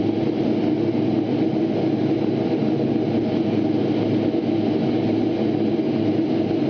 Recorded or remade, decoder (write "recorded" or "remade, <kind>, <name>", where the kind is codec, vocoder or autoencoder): recorded